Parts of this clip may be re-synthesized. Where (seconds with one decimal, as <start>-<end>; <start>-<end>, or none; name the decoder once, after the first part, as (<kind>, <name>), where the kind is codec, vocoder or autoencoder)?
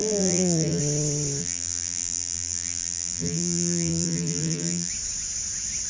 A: 0.0-0.8 (vocoder, BigVGAN v2); 1.4-4.9